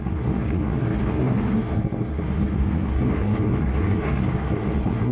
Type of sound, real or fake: fake